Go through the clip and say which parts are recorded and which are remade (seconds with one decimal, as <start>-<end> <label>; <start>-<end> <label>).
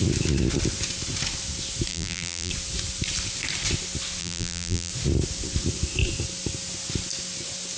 0.0-1.9 recorded; 1.9-2.5 remade; 2.5-4.2 recorded; 4.2-4.9 remade; 4.9-7.8 recorded